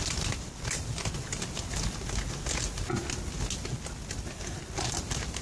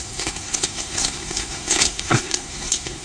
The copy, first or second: second